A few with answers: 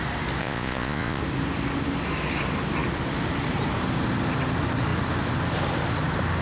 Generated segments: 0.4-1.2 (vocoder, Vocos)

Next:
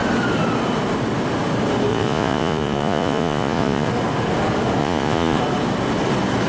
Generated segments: 1.9-3.9 (vocoder, Vocos); 4.8-5.4

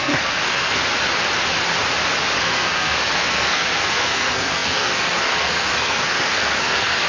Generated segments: 0.0-0.8 (codec, SNAC); 2.4-7.1

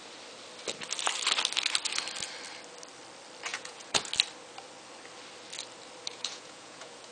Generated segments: 3.5-4.1 (vocoder, Vocos); 6.1-7.1

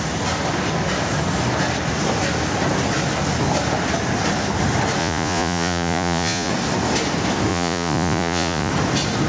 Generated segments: 5.0-6.5 (vocoder, Vocos); 7.5-8.7

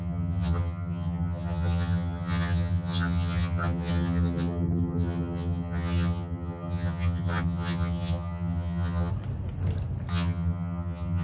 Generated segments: 0.0-9.1 (vocoder, HiFi-GAN); 10.1-11.2

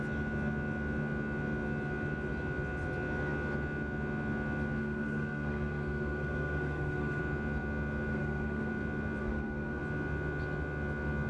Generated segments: 4.8-7.2 (codec, SNAC); 8.1-8.7; 9.2-9.8